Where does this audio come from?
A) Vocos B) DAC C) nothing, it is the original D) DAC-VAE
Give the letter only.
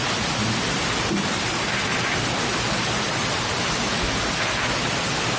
C